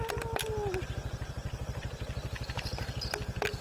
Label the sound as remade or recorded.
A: recorded